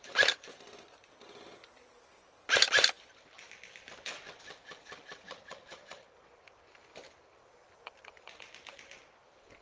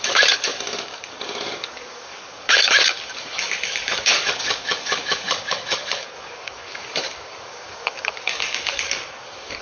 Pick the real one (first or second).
first